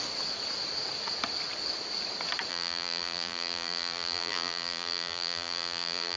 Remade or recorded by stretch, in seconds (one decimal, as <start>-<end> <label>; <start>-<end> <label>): 0.0-2.5 recorded; 2.5-6.2 remade